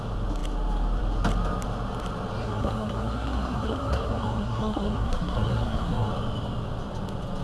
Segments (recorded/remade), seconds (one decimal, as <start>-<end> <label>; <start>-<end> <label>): 0.0-2.4 recorded; 2.4-6.1 remade; 6.1-7.4 recorded